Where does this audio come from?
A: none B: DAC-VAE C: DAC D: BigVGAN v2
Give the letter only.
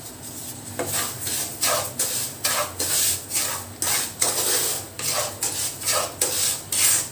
A